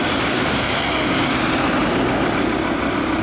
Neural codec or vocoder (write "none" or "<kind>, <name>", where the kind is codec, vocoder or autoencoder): none